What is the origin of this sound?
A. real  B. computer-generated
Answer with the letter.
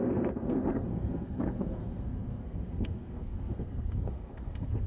B